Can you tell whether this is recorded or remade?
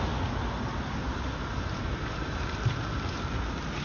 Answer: recorded